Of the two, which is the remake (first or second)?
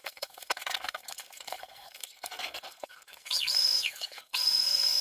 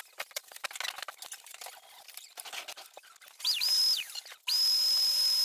first